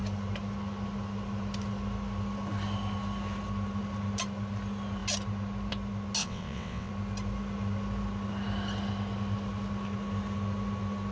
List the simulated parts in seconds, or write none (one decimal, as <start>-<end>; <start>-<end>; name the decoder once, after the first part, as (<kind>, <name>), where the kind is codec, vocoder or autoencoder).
6.2-6.9 (vocoder, WaveNeXt)